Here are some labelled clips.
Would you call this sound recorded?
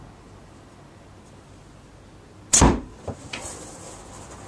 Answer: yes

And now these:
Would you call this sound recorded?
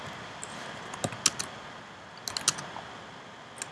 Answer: yes